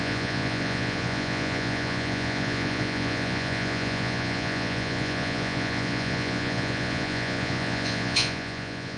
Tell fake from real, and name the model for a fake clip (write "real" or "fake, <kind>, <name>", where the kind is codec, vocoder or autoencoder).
fake, vocoder, Vocos